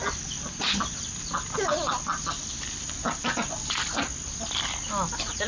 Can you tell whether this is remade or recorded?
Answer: recorded